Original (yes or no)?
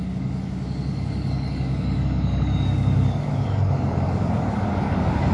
no